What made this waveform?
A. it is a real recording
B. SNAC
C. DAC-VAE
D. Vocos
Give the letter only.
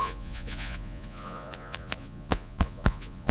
D